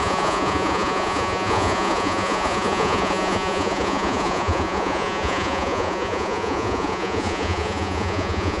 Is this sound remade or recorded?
remade